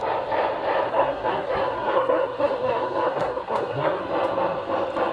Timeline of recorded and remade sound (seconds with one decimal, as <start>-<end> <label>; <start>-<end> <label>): 0.0-0.9 recorded; 0.9-4.0 remade; 4.0-5.1 recorded